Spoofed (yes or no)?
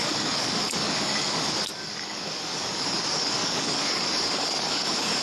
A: yes